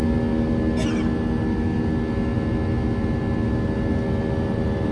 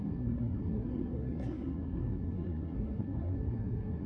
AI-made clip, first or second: second